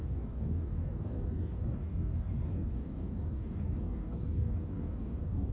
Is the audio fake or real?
fake